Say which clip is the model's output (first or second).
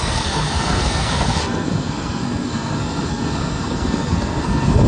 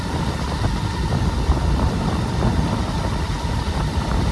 first